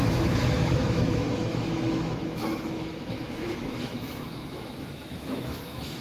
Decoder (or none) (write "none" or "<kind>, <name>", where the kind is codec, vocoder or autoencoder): autoencoder, DAC-VAE